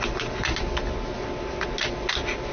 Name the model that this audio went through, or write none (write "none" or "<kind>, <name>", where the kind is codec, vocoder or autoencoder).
none